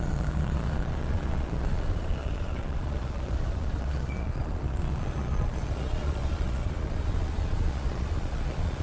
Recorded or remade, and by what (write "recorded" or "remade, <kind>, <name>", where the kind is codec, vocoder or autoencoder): remade, vocoder, Vocos